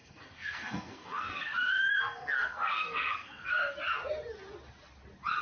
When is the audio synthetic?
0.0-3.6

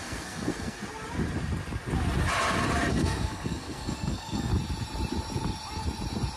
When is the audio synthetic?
0.0-0.8; 2.9-4.5

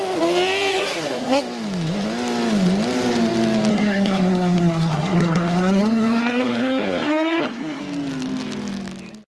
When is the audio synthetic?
0.7-1.4; 3.7-7.8

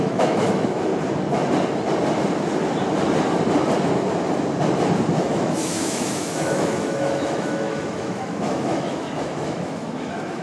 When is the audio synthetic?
0.0-0.9; 5.1-10.4

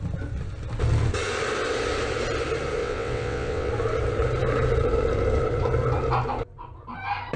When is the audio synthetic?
2.8-3.7